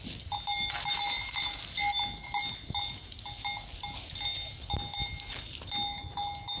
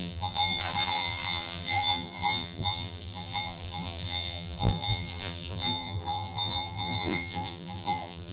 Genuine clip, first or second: first